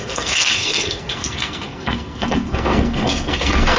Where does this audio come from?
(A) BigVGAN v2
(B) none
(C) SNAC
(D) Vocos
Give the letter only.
C